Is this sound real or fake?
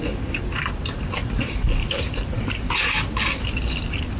real